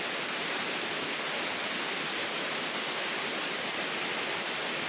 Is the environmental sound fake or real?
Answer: real